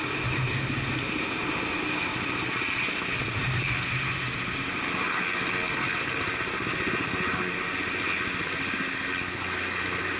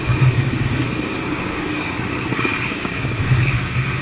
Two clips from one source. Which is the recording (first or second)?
first